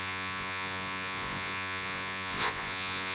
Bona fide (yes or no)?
no